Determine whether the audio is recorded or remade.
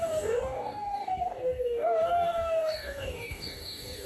remade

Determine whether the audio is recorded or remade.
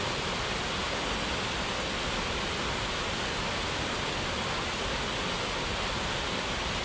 recorded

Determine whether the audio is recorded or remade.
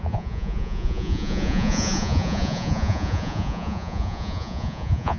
remade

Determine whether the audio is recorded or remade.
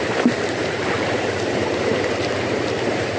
remade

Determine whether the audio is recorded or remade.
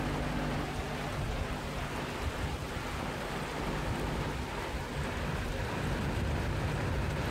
recorded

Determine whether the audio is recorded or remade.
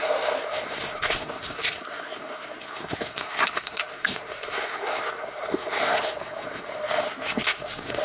remade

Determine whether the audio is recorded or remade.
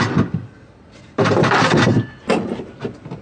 recorded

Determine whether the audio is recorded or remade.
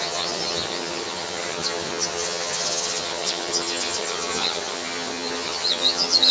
remade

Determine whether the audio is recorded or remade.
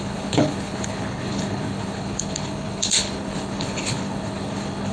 remade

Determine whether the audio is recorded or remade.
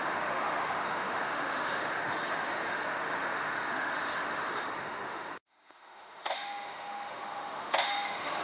remade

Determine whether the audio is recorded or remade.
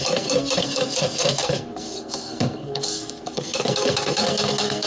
remade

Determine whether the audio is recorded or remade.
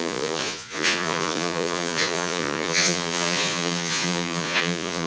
remade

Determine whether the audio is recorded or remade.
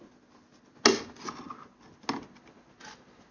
recorded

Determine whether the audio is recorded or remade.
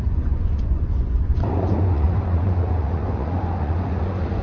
remade